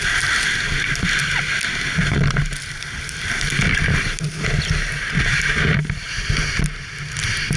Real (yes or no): yes